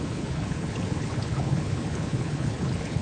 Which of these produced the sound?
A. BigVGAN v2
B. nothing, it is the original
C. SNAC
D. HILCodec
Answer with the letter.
D